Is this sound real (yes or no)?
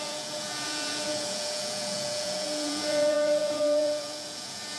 no